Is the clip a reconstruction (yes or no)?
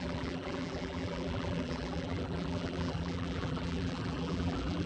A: yes